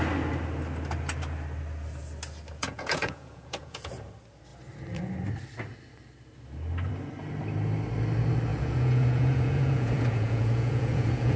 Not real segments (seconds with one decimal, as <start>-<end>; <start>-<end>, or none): 2.6-3.9; 8.5-11.4